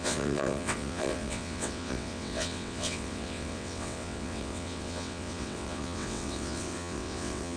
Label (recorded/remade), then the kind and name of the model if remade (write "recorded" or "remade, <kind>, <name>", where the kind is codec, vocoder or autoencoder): remade, vocoder, WaveNeXt